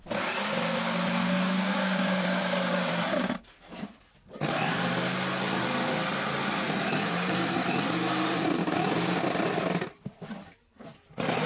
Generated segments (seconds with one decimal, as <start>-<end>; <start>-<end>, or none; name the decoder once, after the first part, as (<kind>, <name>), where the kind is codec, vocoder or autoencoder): 1.2-2.9 (codec, DAC); 8.6-9.2